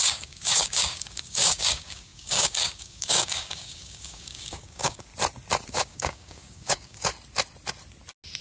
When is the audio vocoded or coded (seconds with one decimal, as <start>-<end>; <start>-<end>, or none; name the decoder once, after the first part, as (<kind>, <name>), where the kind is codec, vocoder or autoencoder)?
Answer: 0.0-5.1 (codec, DAC); 5.7-7.1